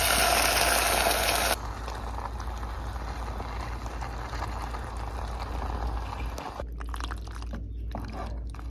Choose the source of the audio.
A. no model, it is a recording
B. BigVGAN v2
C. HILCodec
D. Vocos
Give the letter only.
A